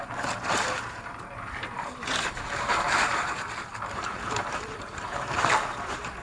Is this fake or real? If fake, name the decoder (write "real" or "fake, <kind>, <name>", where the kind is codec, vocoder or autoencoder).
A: fake, vocoder, BigVGAN v2